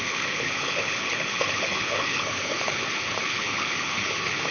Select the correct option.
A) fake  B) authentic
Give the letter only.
A